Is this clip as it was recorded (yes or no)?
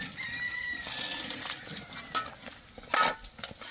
yes